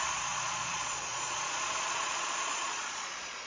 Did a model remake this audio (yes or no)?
yes